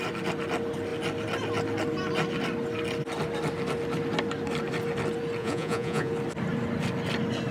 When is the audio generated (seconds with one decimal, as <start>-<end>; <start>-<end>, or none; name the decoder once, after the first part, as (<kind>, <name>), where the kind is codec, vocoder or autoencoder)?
5.4-6.1 (vocoder, Vocos)